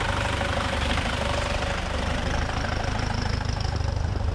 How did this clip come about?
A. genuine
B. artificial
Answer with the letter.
B